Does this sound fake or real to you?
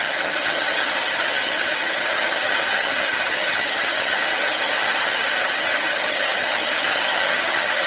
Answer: fake